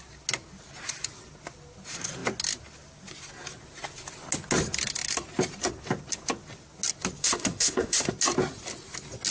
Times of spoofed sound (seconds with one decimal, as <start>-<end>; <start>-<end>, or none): 7.2-8.1